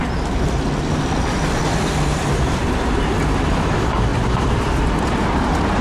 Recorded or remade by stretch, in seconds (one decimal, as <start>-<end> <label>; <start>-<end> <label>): 0.0-4.1 recorded; 4.1-5.0 remade; 5.0-5.8 recorded